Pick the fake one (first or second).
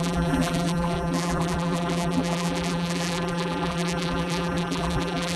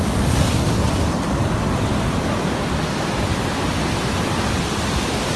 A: first